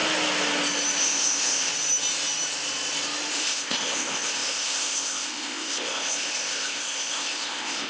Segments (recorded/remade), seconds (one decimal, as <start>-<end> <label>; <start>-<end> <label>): 0.0-1.0 recorded; 1.0-1.7 remade; 1.7-3.3 recorded; 3.3-7.9 remade